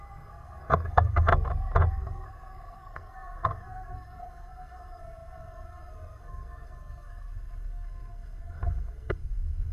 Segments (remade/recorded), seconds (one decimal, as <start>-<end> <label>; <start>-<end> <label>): 0.0-1.3 remade; 1.3-1.9 recorded; 1.9-9.7 remade